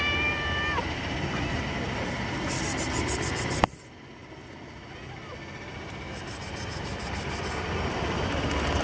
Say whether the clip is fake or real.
real